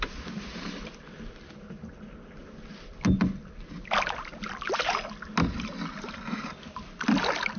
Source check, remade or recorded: recorded